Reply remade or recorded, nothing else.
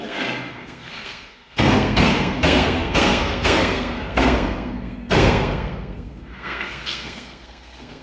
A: remade